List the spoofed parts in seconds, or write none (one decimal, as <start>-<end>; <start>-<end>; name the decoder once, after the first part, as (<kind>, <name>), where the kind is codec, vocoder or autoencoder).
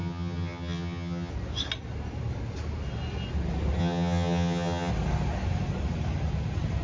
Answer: 0.0-1.3 (vocoder, HiFi-GAN); 3.8-4.9